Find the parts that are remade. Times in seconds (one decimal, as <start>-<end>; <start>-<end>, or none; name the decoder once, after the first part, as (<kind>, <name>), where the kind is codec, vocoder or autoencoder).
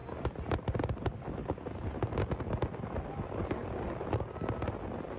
none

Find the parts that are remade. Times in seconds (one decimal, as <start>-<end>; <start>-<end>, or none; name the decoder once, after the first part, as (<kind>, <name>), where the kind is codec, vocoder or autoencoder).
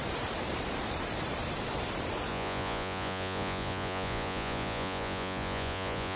2.3-6.2 (vocoder, Vocos)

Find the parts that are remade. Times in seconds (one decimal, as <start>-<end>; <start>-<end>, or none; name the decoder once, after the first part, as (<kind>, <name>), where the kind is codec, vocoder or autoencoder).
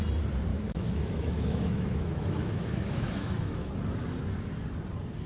0.5-3.7 (autoencoder, DAC-VAE)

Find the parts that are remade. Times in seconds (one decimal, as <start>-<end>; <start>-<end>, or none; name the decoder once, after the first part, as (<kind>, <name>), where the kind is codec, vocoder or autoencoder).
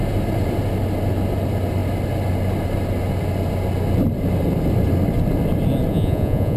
5.9-6.6 (vocoder, Vocos)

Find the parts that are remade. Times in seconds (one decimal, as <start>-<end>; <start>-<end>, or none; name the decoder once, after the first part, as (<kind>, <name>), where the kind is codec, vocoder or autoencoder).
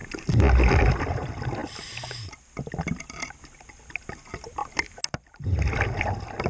none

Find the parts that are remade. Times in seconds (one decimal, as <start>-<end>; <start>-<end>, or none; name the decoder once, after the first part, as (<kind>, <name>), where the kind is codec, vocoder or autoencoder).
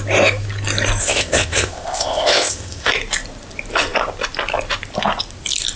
1.0-2.9 (codec, ZipCodec)